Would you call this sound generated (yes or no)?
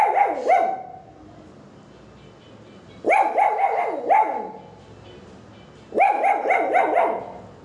no